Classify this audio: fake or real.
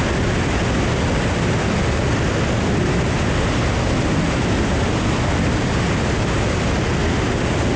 real